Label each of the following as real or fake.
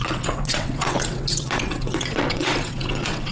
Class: fake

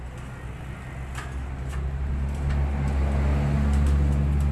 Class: real